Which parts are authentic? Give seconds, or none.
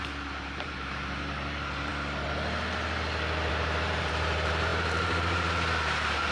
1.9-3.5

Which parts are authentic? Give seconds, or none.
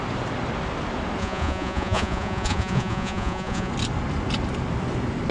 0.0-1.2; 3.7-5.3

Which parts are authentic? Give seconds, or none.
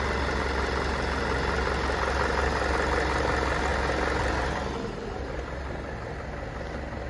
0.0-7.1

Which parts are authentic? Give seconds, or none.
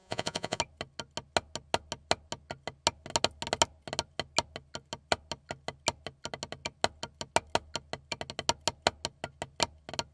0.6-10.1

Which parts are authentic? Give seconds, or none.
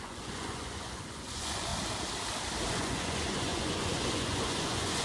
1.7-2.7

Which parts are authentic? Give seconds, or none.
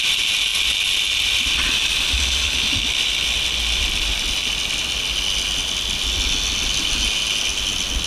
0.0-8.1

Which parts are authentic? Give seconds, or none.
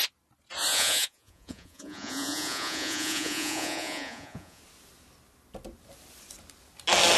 0.0-0.7; 4.6-7.2